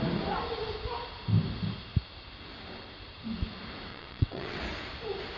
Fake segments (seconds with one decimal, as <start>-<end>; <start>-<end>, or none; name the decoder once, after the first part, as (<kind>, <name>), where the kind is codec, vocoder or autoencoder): 3.9-4.6 (vocoder, WaveNeXt)